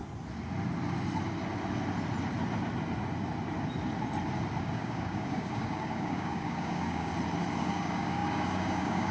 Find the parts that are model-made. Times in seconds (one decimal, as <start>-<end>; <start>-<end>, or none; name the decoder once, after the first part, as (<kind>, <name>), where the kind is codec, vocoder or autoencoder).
4.6-7.1 (codec, DAC); 7.6-9.1